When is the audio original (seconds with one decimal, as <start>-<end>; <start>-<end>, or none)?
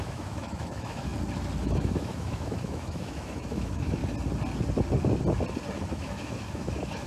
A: 1.1-1.6; 4.0-5.9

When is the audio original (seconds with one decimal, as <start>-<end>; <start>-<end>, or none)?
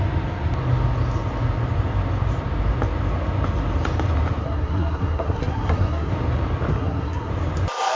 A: 0.0-4.4; 6.1-6.7; 7.3-7.9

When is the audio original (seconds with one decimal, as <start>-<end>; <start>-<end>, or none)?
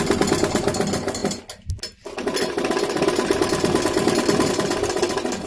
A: 0.0-5.5